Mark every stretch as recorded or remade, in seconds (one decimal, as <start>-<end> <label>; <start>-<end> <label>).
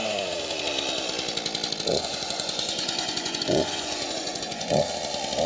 0.0-1.9 recorded; 1.9-4.8 remade; 4.8-5.5 recorded